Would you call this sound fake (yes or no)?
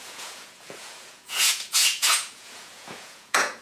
yes